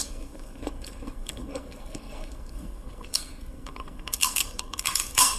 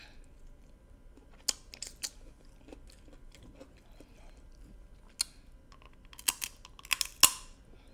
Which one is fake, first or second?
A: first